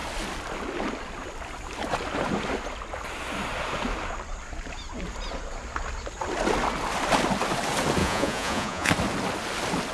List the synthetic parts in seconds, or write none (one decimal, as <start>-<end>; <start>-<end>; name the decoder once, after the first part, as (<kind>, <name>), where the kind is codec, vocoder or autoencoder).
8.0-8.9 (vocoder, Vocos)